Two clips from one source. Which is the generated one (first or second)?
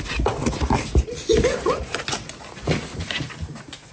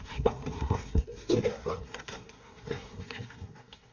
second